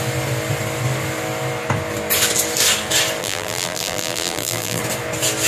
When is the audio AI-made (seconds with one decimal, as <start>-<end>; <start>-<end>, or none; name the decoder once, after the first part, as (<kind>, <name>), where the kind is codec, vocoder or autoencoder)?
3.2-4.8 (vocoder, BigVGAN v2)